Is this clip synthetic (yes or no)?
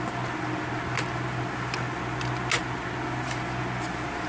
no